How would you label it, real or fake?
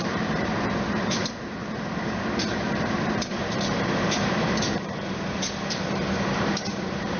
fake